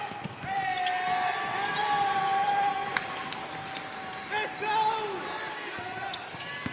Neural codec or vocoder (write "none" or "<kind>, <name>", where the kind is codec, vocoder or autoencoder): none